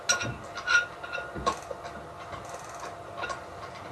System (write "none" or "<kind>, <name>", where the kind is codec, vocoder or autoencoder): none